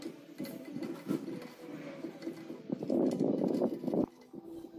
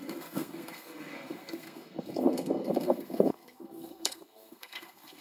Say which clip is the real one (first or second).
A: first